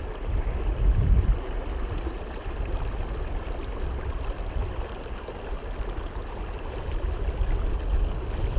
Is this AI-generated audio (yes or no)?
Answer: no